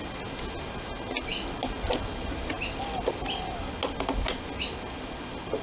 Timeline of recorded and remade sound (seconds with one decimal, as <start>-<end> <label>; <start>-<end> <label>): 0.0-5.6 recorded